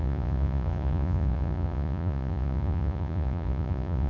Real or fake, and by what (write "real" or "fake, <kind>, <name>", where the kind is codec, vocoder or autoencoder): fake, vocoder, Vocos